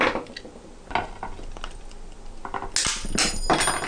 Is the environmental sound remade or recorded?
recorded